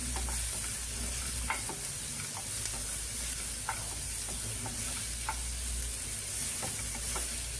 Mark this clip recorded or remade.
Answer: recorded